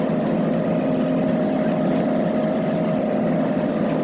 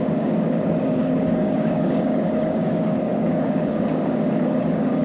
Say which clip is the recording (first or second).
first